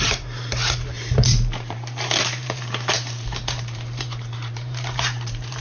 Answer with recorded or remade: remade